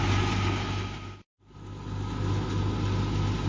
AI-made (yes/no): no